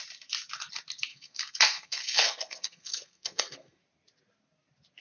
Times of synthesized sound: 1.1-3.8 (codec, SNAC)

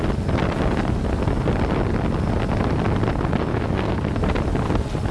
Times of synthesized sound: 3.5-4.1 (codec, SNAC)

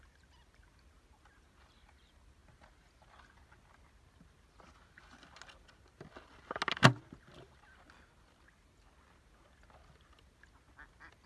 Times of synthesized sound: none

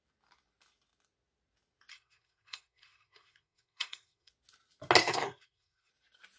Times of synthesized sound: 1.9-4.3 (codec, SNAC); 5.0-5.9

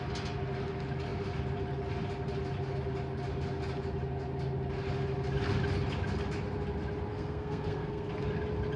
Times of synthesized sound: 7.1-8.1 (codec, SNAC)

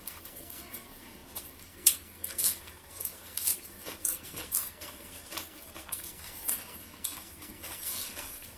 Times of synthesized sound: 0.0-8.6 (codec, SNAC)